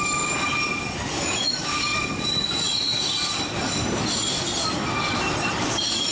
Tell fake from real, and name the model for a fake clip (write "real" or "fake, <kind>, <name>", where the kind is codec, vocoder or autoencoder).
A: real